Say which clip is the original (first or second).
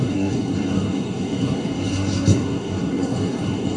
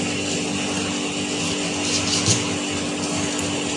second